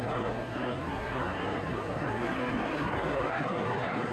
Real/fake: fake